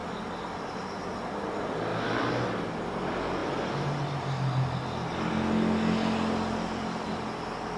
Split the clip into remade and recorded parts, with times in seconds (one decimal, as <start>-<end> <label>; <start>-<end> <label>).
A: 0.0-7.8 recorded